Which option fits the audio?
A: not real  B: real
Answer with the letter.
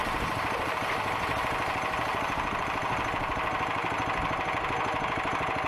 B